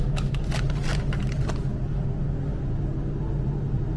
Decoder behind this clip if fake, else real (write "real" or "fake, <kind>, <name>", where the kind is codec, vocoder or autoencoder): real